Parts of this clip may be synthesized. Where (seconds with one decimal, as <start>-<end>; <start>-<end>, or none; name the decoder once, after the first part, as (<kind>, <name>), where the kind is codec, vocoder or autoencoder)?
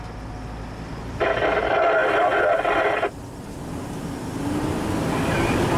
none